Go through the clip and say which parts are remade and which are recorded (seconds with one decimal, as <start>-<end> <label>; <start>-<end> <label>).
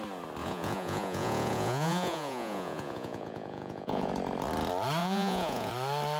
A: 0.0-0.4 recorded; 0.4-4.1 remade; 4.1-5.0 recorded; 5.0-5.7 remade; 5.7-6.2 recorded